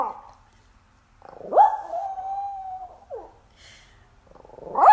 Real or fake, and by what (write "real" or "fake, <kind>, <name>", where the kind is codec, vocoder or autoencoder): real